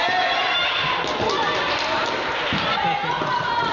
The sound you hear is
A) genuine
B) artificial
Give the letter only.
A